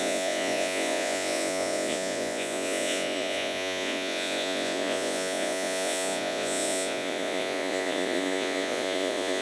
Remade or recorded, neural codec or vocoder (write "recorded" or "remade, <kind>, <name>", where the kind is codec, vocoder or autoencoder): remade, vocoder, Vocos